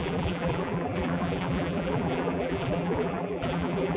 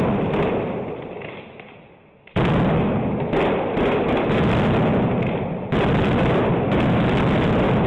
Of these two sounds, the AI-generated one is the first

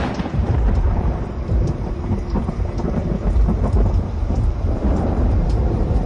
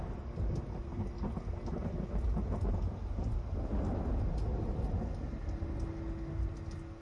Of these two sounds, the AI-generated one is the first